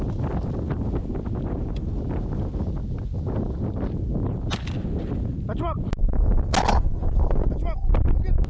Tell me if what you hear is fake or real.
real